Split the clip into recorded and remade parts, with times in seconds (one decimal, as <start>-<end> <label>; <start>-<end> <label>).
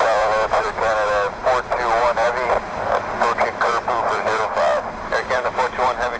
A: 0.0-1.4 remade; 1.4-2.0 recorded; 2.0-6.2 remade